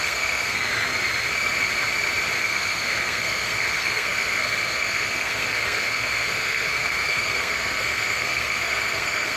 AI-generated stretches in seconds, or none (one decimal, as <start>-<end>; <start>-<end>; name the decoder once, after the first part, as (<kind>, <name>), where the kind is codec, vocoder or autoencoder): 0.0-0.7 (codec, SNAC); 2.4-9.4